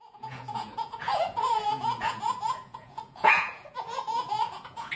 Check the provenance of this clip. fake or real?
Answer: fake